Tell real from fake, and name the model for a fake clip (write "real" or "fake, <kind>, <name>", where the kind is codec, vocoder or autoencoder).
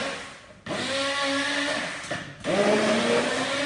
real